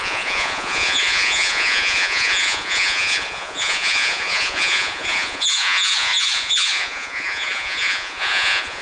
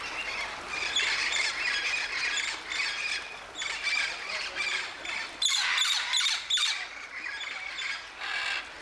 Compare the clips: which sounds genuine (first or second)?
second